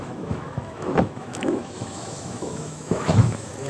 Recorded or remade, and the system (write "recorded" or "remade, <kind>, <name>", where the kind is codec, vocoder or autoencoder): remade, autoencoder, DAC-VAE